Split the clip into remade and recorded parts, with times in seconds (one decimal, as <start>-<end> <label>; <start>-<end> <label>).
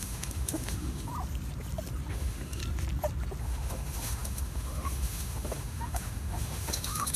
0.0-1.1 remade; 1.1-2.1 recorded; 2.1-2.6 remade; 2.6-3.4 recorded; 3.4-7.2 remade